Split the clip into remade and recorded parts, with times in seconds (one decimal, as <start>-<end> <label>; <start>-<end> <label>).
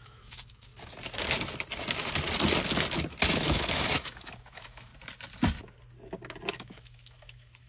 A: 0.0-0.7 remade; 0.7-3.3 recorded; 3.3-4.9 remade; 4.9-6.5 recorded; 6.5-7.7 remade